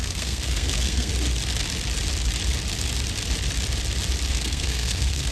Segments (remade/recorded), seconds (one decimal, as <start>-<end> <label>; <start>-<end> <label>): 0.0-1.1 remade; 1.1-4.3 recorded; 4.3-5.3 remade